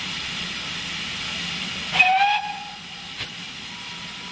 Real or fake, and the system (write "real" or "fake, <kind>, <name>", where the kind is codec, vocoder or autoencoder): fake, vocoder, BigVGAN v2